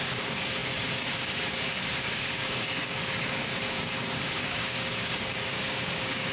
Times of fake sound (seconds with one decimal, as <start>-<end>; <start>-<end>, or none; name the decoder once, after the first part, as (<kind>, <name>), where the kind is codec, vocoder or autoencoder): 0.0-6.3 (codec, DAC)